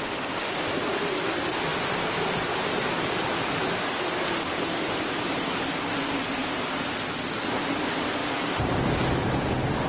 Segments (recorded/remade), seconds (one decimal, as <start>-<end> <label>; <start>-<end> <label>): 0.0-6.4 recorded; 6.4-6.9 remade; 6.9-8.2 recorded; 8.2-8.8 remade; 8.8-9.9 recorded